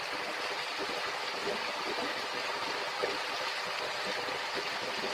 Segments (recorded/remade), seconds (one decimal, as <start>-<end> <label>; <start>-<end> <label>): 0.0-5.1 recorded